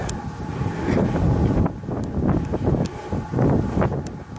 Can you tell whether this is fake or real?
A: real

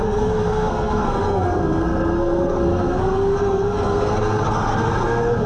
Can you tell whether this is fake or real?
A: fake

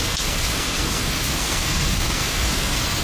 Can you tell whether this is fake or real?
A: fake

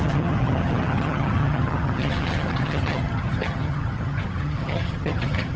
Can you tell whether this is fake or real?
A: fake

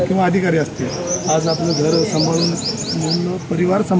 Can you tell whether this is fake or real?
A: real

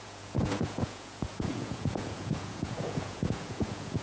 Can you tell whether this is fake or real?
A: fake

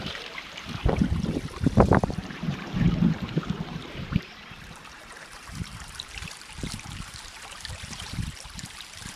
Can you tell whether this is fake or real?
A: fake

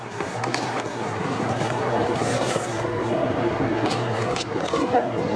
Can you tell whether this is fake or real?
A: fake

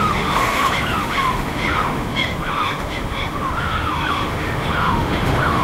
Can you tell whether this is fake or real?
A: fake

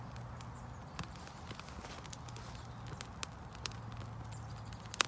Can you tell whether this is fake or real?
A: real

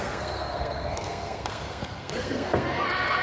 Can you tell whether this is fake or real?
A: fake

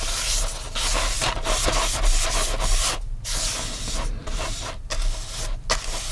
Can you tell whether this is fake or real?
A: real